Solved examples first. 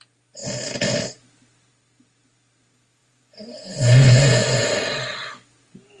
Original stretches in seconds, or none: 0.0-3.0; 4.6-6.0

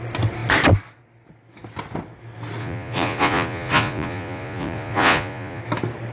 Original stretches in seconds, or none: 0.0-2.6; 5.6-6.1

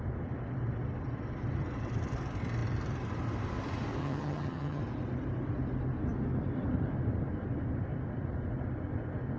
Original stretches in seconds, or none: 0.0-4.0; 4.8-9.4